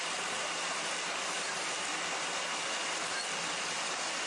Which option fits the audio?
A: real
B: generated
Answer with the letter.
A